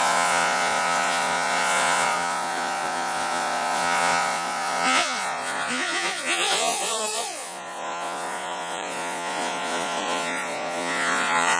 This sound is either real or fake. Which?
fake